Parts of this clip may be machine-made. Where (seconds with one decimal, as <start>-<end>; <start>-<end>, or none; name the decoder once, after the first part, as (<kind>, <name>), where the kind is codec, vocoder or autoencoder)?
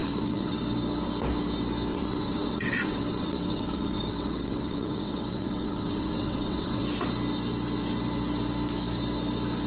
0.0-0.6 (vocoder, WaveNeXt); 1.9-6.8